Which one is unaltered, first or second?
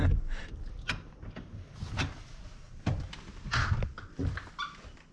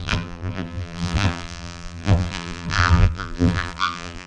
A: first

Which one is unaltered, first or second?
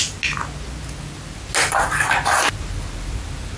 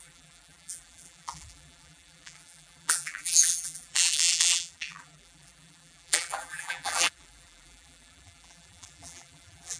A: first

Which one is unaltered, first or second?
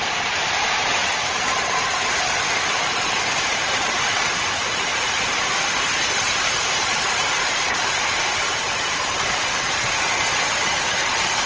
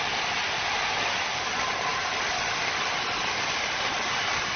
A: second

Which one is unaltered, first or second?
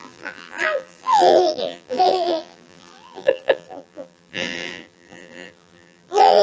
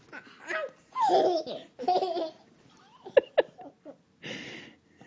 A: second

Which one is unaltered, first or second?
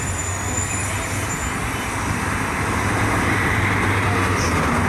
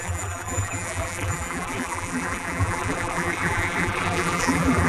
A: first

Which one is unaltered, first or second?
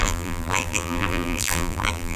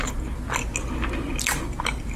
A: second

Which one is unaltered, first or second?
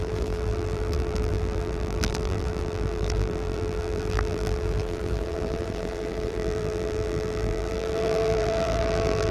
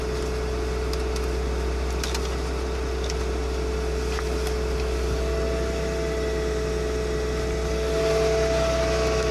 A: second